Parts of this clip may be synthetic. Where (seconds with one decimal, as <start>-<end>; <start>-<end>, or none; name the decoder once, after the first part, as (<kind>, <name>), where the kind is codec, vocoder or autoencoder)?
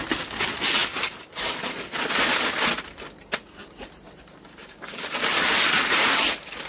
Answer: 0.8-1.5 (vocoder, BigVGAN v2); 3.6-6.2